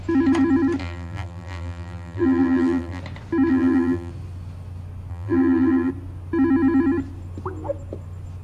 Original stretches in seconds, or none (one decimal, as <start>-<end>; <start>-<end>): 0.0-0.8; 3.0-3.5; 4.1-5.1; 5.9-8.4